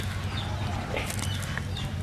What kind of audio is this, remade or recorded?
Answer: recorded